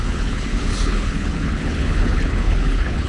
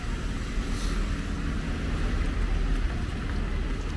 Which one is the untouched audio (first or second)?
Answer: second